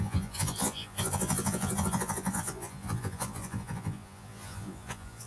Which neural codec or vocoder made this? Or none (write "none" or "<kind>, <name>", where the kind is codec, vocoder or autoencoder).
vocoder, Vocos